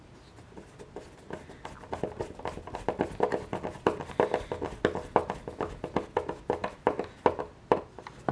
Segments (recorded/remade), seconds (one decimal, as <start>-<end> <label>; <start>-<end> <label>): 0.0-8.3 recorded